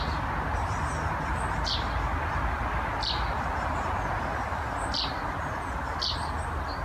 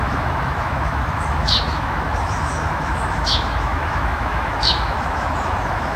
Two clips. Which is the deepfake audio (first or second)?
second